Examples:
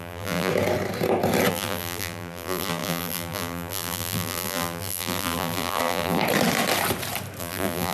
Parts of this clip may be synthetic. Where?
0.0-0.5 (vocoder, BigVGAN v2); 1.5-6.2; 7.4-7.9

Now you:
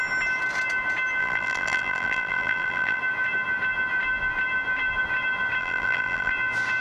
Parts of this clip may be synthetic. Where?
1.2-3.0 (vocoder, BigVGAN v2); 5.6-6.3

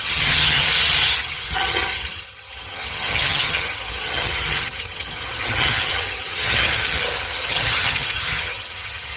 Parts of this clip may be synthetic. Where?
0.0-0.6 (vocoder, HiFi-GAN); 1.1-9.2

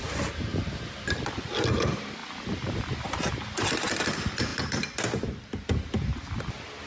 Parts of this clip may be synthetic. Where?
none

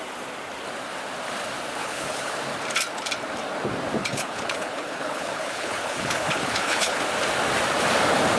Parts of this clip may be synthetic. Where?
1.8-2.3 (codec, HILCodec); 4.0-7.0

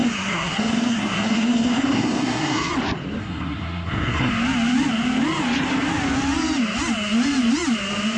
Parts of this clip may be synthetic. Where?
0.0-2.7 (codec, SNAC); 3.2-4.3